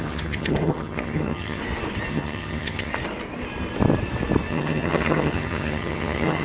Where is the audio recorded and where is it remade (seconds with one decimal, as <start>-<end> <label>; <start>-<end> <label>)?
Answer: 0.0-1.6 remade; 1.6-2.1 recorded; 2.1-2.9 remade; 2.9-4.5 recorded; 4.5-6.4 remade